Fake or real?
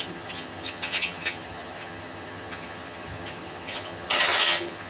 fake